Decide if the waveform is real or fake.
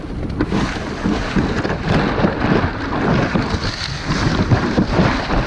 real